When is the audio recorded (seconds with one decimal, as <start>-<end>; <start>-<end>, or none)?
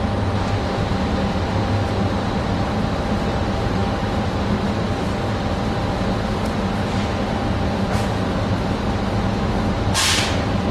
0.0-10.7